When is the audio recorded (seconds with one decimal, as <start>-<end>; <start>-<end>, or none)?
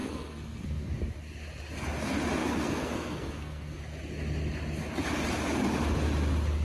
0.9-2.4; 3.8-6.6